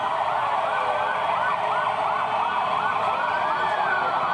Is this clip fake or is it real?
real